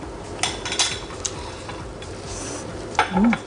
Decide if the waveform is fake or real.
real